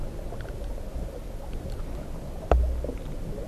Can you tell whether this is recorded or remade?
recorded